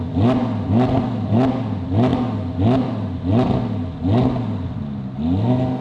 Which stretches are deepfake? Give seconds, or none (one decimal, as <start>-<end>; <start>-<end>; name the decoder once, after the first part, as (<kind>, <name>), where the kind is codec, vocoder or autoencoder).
none